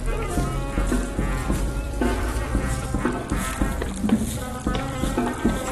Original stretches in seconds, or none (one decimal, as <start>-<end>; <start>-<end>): 0.0-1.4; 3.0-5.7